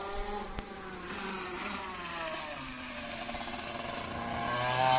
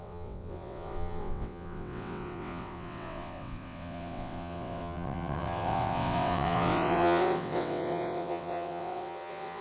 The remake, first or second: second